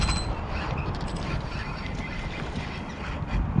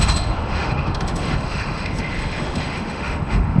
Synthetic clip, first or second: second